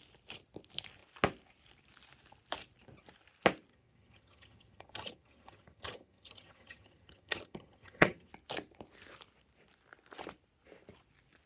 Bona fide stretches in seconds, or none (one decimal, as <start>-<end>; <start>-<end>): 0.0-3.7; 8.3-11.5